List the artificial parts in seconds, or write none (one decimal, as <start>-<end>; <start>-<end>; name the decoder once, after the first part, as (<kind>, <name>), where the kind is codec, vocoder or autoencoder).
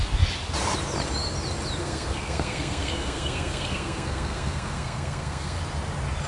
1.8-5.6 (codec, SNAC)